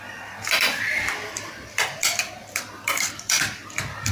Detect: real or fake fake